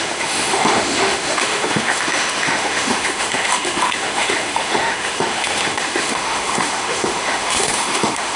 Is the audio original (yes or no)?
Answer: no